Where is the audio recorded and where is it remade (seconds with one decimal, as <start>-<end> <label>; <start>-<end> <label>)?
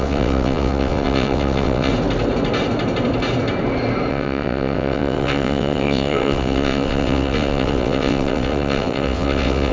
0.0-1.9 remade; 1.9-4.1 recorded; 4.1-9.7 remade